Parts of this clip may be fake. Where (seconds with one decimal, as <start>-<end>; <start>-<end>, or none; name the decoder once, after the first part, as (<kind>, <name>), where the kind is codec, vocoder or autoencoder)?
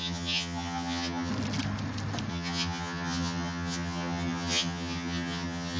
0.0-1.3 (vocoder, HiFi-GAN); 2.3-5.8